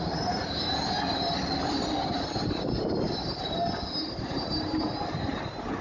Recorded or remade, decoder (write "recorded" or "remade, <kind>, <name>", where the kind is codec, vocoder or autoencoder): recorded